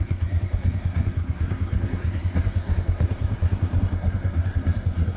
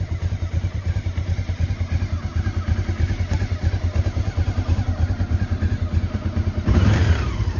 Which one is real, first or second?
second